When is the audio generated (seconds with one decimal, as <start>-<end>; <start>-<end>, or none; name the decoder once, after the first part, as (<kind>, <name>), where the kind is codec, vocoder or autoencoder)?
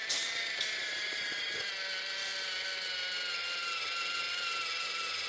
0.0-1.7 (vocoder, BigVGAN v2)